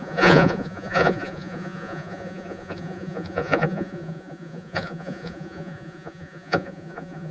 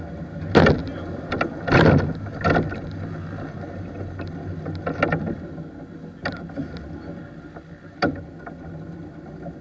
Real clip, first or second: second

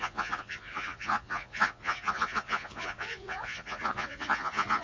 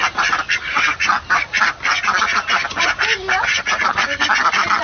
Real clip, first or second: second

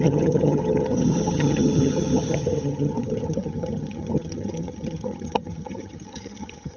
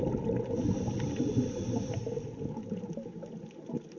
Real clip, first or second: second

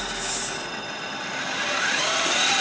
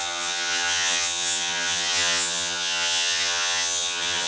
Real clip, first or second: first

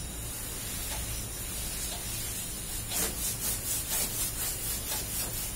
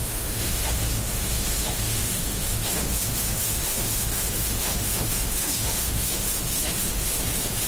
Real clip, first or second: first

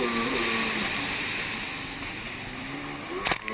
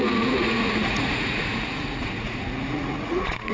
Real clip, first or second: first